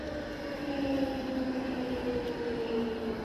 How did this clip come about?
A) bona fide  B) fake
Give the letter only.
A